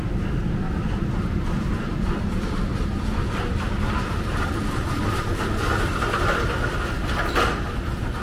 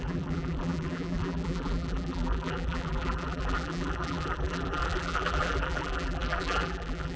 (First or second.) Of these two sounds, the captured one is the first